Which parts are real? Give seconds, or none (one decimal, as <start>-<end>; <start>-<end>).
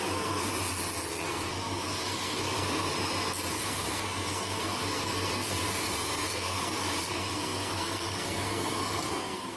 0.5-1.1; 2.9-3.6